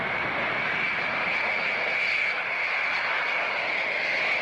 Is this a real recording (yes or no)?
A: yes